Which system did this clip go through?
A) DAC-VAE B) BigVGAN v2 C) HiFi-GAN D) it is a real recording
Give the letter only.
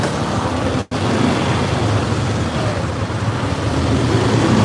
D